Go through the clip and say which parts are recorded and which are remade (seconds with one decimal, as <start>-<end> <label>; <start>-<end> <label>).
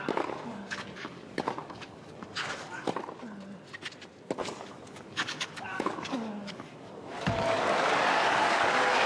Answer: 0.0-2.9 remade; 2.9-4.4 recorded; 4.4-9.1 remade